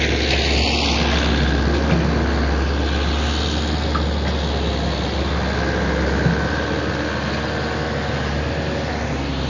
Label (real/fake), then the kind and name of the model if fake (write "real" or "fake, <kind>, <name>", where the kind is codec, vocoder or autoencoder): real